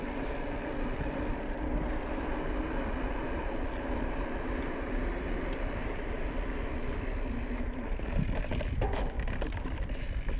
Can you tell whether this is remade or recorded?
remade